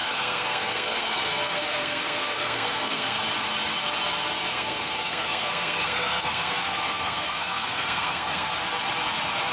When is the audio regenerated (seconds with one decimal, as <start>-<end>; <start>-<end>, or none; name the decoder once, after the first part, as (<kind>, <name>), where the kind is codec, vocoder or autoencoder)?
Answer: 0.0-3.2 (codec, SNAC); 4.5-8.5